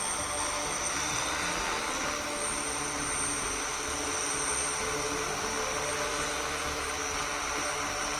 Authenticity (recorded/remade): recorded